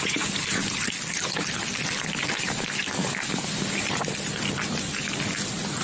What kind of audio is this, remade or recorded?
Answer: recorded